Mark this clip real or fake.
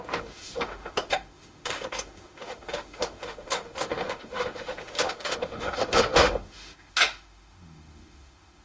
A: fake